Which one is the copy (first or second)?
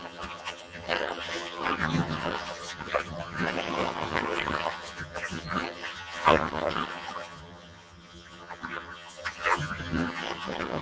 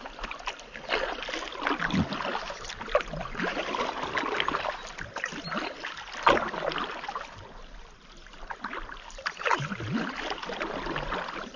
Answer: first